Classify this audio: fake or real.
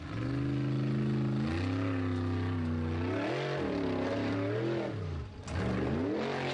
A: real